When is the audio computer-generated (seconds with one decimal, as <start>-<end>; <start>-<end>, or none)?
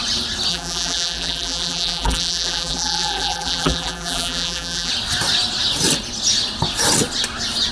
0.5-4.9